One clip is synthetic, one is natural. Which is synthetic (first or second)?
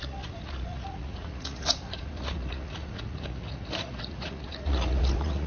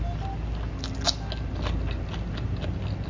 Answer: first